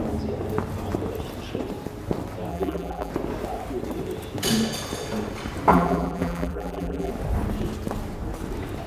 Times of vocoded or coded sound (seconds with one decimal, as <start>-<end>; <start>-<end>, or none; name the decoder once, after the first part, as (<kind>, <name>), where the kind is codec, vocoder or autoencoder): 2.5-3.1 (vocoder, BigVGAN v2); 5.7-7.1